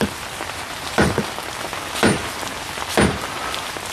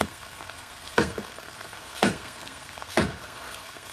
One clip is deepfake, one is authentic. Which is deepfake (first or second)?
second